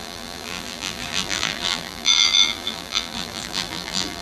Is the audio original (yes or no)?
no